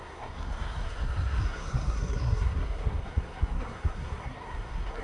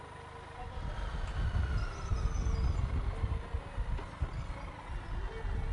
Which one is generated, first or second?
first